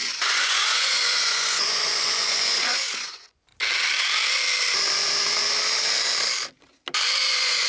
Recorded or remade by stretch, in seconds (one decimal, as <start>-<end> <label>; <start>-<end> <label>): 0.0-3.5 remade; 3.5-7.2 recorded; 7.2-7.7 remade